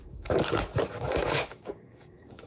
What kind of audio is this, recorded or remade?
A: remade